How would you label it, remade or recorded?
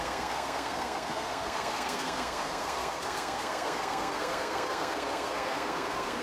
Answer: remade